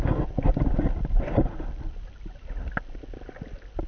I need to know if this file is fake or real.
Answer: real